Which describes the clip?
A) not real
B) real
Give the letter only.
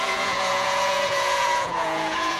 A